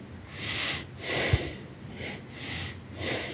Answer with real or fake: real